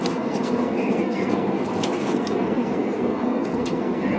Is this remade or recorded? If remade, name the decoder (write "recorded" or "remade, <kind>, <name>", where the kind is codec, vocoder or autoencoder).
remade, codec, SNAC